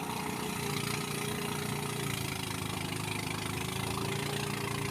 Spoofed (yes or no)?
no